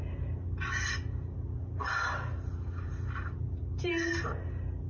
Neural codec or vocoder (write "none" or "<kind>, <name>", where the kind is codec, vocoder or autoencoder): none